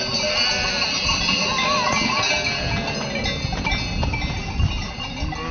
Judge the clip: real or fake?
real